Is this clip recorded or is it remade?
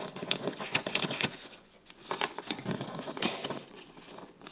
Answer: remade